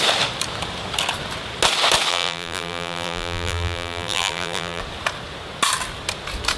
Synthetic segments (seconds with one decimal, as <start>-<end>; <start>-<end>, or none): 2.1-4.8